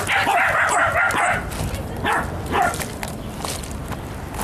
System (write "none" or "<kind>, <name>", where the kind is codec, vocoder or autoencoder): none